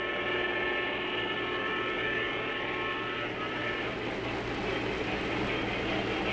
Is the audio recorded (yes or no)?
yes